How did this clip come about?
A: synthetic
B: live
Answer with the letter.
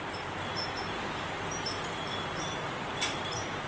A